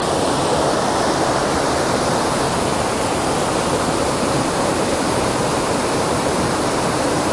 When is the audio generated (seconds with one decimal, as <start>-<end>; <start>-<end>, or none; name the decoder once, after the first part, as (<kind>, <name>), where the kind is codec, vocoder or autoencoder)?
1.4-2.2 (vocoder, BigVGAN v2); 2.7-7.3